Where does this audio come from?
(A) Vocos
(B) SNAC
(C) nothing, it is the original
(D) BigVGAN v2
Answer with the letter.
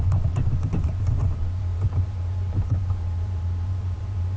D